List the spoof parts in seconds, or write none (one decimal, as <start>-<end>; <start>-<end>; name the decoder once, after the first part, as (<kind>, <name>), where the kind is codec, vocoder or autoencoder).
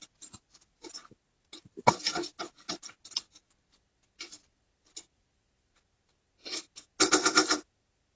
none